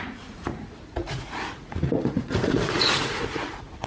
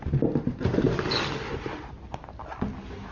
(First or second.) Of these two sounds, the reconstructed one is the first